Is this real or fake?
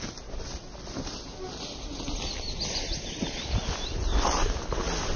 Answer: real